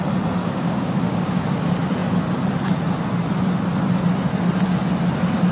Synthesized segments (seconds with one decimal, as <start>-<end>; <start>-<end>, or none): 0.4-1.4